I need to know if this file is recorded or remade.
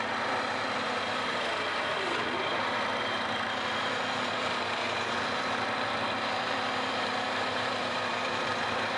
remade